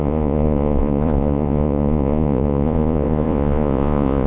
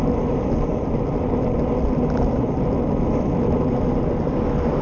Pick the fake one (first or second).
first